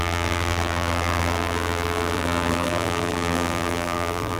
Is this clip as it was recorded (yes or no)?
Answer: no